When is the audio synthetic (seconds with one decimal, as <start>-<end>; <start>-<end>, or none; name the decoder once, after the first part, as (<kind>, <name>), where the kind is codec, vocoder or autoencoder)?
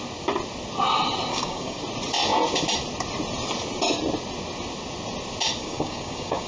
1.3-1.8 (codec, DAC); 5.6-6.5